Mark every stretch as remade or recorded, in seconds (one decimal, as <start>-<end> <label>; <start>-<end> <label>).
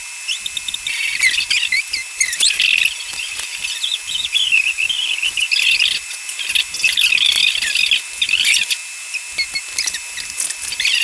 0.0-11.0 recorded